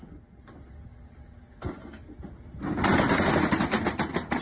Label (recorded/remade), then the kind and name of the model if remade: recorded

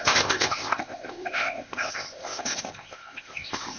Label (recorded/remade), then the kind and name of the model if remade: remade, codec, ZipCodec